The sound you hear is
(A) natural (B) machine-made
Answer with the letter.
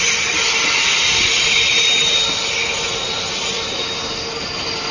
A